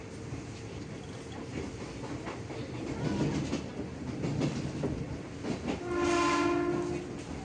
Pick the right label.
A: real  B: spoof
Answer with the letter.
A